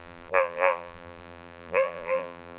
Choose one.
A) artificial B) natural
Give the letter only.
A